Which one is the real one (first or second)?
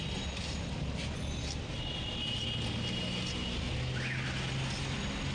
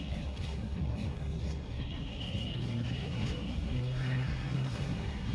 first